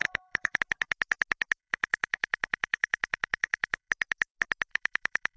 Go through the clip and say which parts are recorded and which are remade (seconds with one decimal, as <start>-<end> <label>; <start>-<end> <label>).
0.0-0.6 remade; 0.6-1.6 recorded; 1.6-3.9 remade; 3.9-4.7 recorded; 4.7-5.4 remade